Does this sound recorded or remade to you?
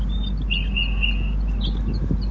recorded